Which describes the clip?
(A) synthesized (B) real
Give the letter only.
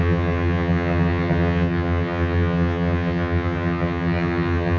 A